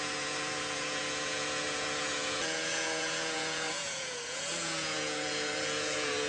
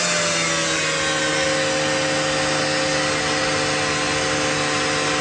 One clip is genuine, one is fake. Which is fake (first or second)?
first